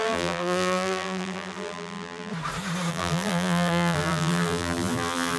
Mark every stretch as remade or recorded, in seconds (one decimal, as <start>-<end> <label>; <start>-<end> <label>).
0.0-2.3 remade; 2.3-2.9 recorded; 2.9-5.4 remade

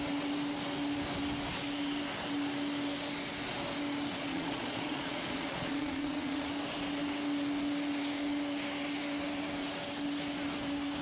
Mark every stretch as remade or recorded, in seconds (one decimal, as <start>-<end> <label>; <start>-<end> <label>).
0.0-4.2 recorded; 4.2-6.5 remade; 6.5-11.0 recorded

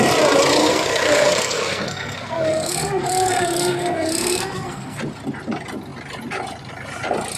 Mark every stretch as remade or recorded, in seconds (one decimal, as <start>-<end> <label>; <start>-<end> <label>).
0.0-0.6 recorded; 0.6-5.0 remade; 5.0-7.4 recorded

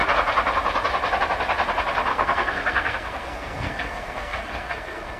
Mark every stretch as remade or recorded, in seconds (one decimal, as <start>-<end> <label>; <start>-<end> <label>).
0.0-2.1 recorded; 2.1-5.2 remade

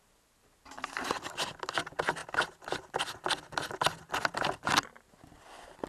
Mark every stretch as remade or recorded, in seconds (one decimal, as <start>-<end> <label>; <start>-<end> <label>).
0.0-5.9 recorded

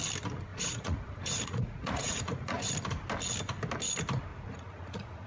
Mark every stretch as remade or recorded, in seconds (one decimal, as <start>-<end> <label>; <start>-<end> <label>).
0.0-0.5 recorded; 0.5-2.7 remade; 2.7-4.3 recorded; 4.3-5.3 remade

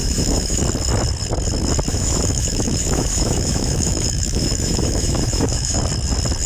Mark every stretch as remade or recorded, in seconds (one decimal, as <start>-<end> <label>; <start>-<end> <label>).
0.0-0.6 remade; 0.6-1.9 recorded; 1.9-5.8 remade; 5.8-6.5 recorded